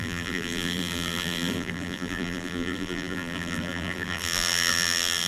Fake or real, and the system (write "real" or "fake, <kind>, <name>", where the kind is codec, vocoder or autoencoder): fake, vocoder, BigVGAN v2